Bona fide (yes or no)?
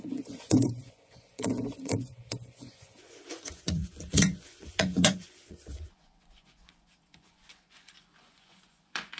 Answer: no